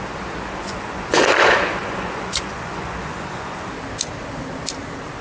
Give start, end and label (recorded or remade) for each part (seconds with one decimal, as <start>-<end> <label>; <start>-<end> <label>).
0.0-0.6 recorded; 0.6-3.7 remade; 3.7-5.2 recorded